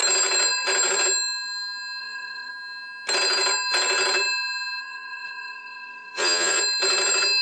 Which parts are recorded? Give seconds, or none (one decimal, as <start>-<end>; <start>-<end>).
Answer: 0.0-2.0; 2.5-4.8; 6.6-7.4